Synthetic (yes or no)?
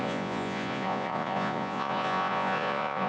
yes